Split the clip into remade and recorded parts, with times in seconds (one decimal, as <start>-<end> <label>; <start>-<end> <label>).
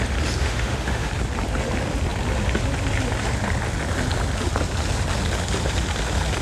0.0-0.4 recorded; 0.4-1.1 remade; 1.1-6.4 recorded